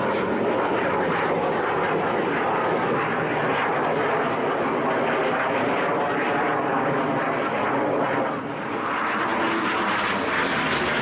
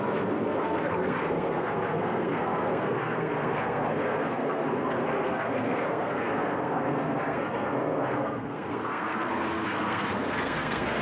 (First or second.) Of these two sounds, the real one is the first